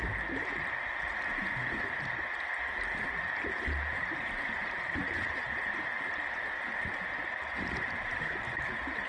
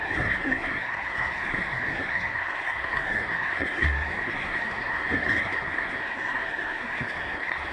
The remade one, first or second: second